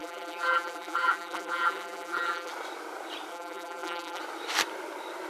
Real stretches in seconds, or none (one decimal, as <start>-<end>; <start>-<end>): 2.5-3.3; 4.2-5.3